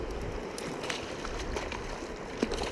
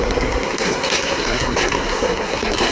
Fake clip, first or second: second